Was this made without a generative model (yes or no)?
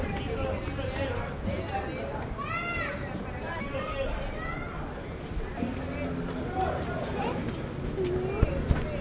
yes